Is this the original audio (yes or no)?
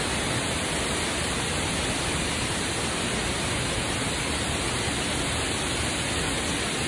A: yes